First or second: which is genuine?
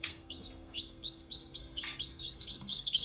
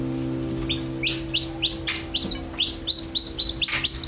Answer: second